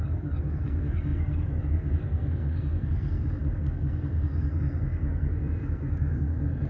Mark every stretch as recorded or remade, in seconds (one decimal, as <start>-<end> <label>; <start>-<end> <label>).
0.0-6.7 remade